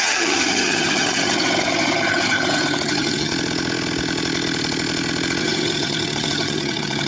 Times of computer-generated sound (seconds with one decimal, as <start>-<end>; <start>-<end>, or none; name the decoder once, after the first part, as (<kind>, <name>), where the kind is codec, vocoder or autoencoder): 0.0-3.3 (vocoder, HiFi-GAN); 5.4-7.1